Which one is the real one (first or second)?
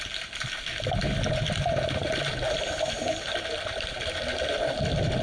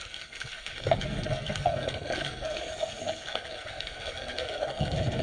first